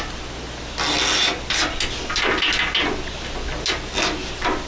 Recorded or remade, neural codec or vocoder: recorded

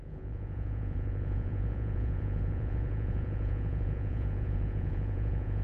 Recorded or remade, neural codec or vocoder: remade, vocoder, Vocos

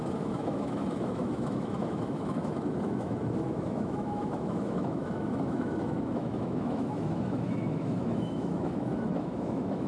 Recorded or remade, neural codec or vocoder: remade, autoencoder, DAC-VAE